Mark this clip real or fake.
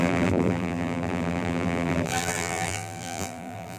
fake